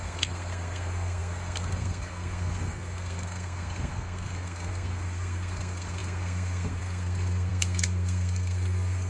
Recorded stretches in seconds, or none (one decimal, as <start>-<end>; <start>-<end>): none